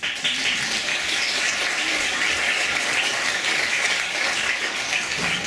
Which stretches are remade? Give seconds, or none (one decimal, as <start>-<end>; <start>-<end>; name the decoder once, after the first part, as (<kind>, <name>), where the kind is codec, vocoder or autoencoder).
0.9-1.5 (codec, DAC); 1.9-5.5